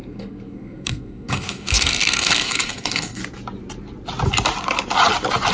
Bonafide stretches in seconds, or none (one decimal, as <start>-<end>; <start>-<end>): 3.2-5.5